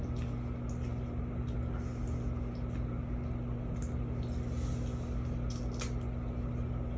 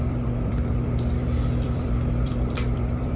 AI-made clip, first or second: second